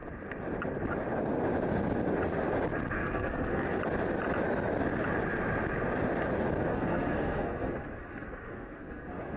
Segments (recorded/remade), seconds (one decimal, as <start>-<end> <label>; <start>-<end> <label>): 0.0-3.0 recorded; 3.0-3.8 remade; 3.8-6.7 recorded; 6.7-9.4 remade

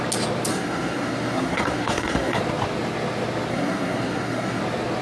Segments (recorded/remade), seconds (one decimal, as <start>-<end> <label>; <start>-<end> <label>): 0.0-0.5 recorded; 0.5-2.4 remade; 2.4-3.5 recorded; 3.5-4.6 remade; 4.6-5.0 recorded